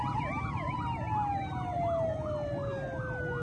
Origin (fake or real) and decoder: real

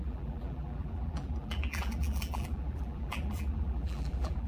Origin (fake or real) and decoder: fake, vocoder, BigVGAN v2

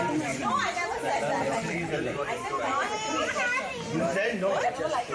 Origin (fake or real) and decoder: fake, vocoder, BigVGAN v2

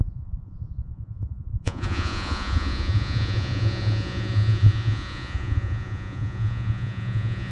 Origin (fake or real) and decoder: fake, vocoder, Vocos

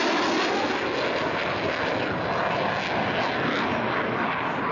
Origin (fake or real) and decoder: real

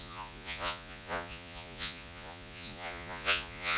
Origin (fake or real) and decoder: fake, vocoder, Vocos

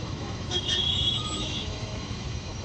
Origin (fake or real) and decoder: fake, autoencoder, DAC-VAE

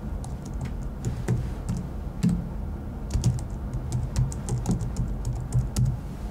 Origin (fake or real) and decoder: real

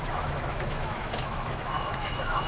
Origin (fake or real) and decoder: fake, autoencoder, DAC-VAE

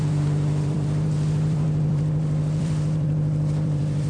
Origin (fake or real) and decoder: fake, vocoder, BigVGAN v2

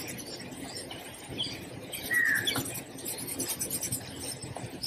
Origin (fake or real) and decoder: real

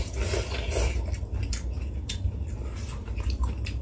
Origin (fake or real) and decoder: fake, vocoder, BigVGAN v2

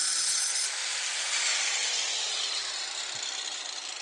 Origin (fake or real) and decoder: real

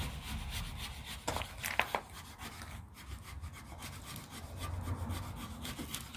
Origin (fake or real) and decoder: real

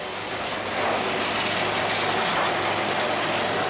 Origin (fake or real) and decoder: real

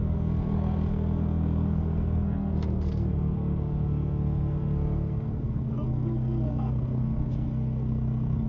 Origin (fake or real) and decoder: fake, codec, SNAC